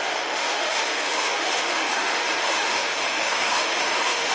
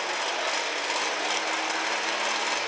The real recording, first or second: second